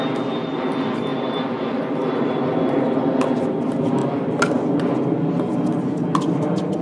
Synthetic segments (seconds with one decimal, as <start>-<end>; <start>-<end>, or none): 1.1-2.4